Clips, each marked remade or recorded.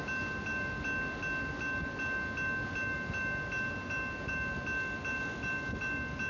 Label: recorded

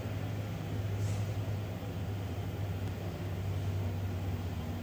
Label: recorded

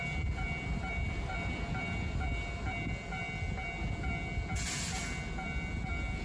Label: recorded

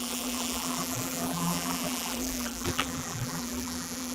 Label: remade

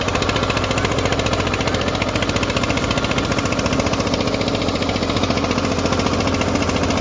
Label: recorded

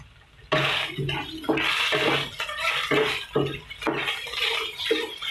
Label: recorded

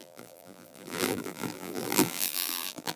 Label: remade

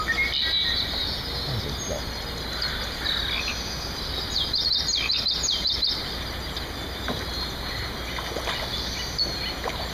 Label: recorded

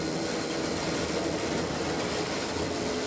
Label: remade